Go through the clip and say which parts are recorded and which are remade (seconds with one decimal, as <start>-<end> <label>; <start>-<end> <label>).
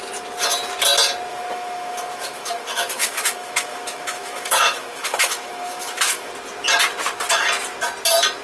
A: 0.0-1.3 recorded; 1.3-6.3 remade; 6.3-8.4 recorded